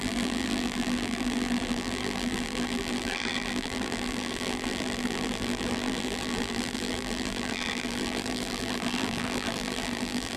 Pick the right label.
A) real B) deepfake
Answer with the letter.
B